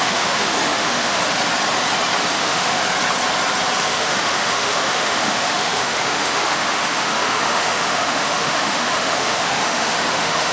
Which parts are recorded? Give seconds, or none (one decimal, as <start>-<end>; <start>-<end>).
1.2-2.3; 2.8-3.8